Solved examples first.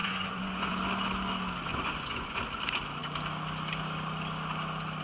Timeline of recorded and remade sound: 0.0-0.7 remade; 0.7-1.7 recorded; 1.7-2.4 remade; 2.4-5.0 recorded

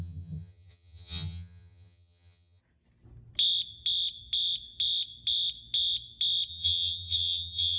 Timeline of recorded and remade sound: 0.0-2.6 remade; 2.6-6.5 recorded; 6.5-7.8 remade

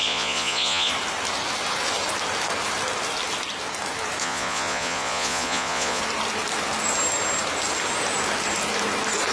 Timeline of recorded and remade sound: 0.0-0.9 remade; 0.9-4.2 recorded; 4.2-6.0 remade; 6.0-9.3 recorded

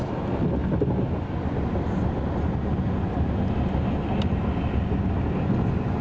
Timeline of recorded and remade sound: 0.0-6.0 recorded

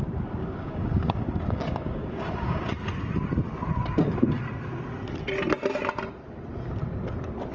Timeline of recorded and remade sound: 0.0-0.4 recorded; 0.4-2.7 remade; 2.7-7.5 recorded

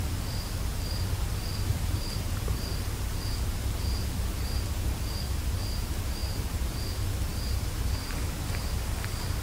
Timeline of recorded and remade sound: 0.0-1.7 recorded; 1.7-4.4 remade; 4.4-6.2 recorded; 6.2-6.8 remade; 6.8-9.4 recorded

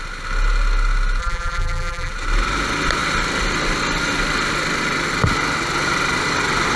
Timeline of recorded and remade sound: 0.0-1.2 recorded; 1.2-2.1 remade; 2.1-6.8 recorded

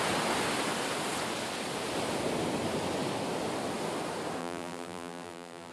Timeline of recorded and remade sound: 0.0-4.4 recorded; 4.4-5.7 remade